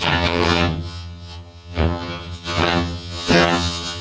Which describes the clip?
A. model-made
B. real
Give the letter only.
A